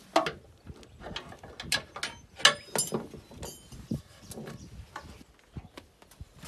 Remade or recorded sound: recorded